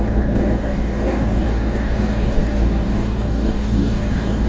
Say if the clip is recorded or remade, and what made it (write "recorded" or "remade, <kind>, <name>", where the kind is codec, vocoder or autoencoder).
remade, codec, DAC